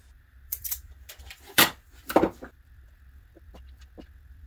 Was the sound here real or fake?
fake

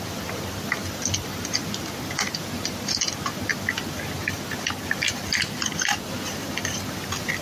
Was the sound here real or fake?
fake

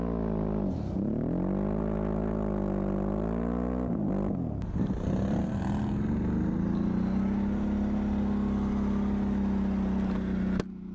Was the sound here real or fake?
real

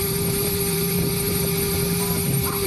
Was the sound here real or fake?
fake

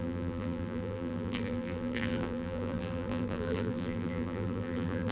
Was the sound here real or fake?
fake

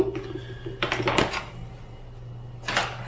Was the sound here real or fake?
real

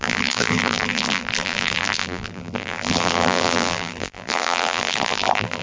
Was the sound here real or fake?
fake